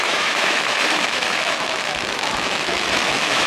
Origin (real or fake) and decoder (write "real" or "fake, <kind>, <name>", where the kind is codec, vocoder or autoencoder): fake, autoencoder, DAC-VAE